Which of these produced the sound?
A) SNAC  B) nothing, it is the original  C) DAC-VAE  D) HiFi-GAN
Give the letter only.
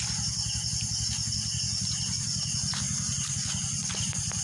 B